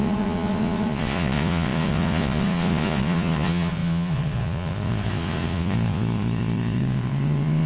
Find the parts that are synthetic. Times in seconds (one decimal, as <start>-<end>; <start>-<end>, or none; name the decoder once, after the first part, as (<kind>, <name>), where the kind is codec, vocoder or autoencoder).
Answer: 0.0-7.7 (vocoder, Vocos)